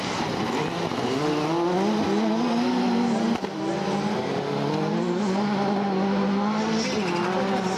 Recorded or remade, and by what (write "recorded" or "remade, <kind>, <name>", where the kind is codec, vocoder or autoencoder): recorded